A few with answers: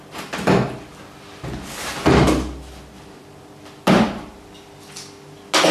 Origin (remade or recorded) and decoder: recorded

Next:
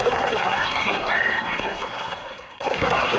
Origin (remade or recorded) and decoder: remade, codec, SNAC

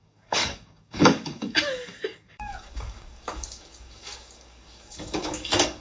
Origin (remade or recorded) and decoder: remade, codec, DAC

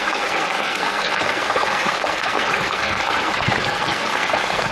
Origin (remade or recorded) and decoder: remade, codec, SNAC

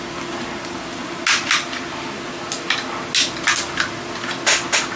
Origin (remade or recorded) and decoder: recorded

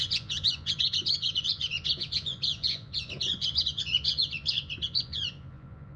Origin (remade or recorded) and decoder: remade, vocoder, Vocos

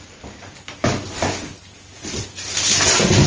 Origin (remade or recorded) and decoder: recorded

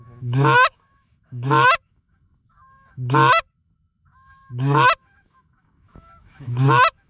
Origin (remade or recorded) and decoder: remade, autoencoder, DAC-VAE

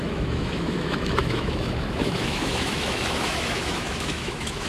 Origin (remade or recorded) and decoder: remade, autoencoder, DAC-VAE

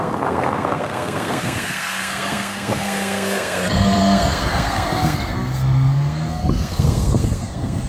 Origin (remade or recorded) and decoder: remade, codec, SNAC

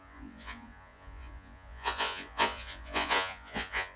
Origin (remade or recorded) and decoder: remade, vocoder, Vocos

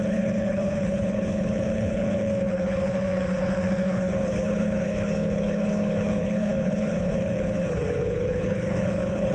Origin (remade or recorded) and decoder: remade, codec, HILCodec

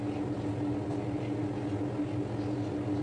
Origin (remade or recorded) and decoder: recorded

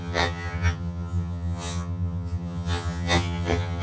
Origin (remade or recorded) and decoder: remade, vocoder, HiFi-GAN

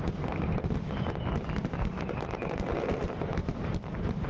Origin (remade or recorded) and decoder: remade, vocoder, BigVGAN v2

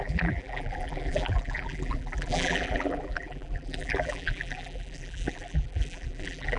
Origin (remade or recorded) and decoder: remade, vocoder, BigVGAN v2